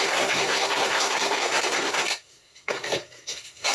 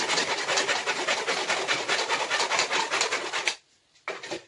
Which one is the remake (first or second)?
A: first